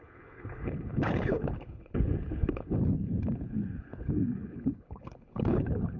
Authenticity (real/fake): fake